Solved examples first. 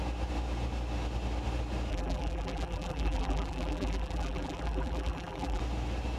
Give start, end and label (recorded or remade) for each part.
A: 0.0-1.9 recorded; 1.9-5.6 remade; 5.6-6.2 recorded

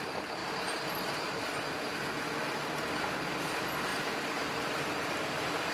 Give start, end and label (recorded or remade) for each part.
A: 0.0-5.7 recorded

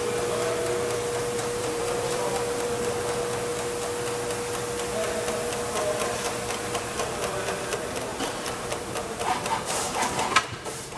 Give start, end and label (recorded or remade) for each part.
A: 0.0-1.4 recorded; 1.4-2.3 remade; 2.3-8.1 recorded; 8.1-11.0 remade

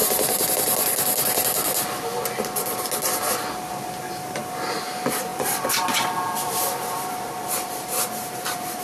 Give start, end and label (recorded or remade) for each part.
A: 0.0-5.3 recorded; 5.3-8.8 remade

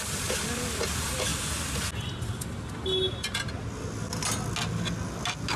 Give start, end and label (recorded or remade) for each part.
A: 0.0-5.6 recorded